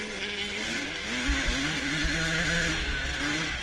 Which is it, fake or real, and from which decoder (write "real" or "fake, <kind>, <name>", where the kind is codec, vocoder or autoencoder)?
real